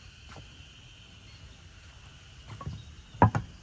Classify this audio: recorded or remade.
recorded